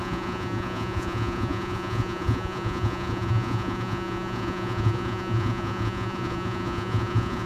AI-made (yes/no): yes